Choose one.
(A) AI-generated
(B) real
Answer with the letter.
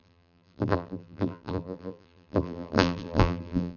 A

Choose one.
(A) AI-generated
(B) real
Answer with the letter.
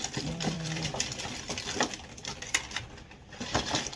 A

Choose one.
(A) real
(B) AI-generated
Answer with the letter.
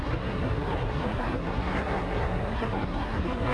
B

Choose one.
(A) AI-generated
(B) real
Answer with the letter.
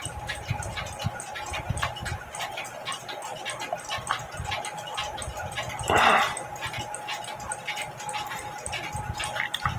B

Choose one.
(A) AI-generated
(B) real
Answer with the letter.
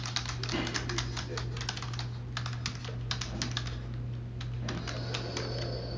B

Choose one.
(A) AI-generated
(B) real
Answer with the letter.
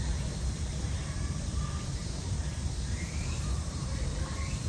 A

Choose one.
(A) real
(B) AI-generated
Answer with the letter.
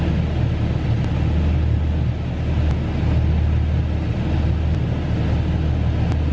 A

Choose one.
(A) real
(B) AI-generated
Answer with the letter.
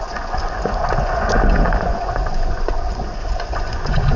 B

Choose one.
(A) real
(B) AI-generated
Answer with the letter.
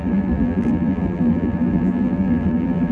B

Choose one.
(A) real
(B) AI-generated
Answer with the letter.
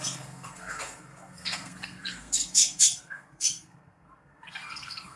B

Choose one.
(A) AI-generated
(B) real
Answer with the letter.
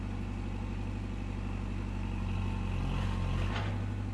B